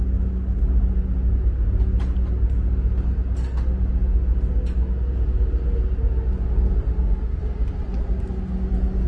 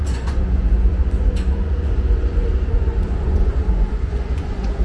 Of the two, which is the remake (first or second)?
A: second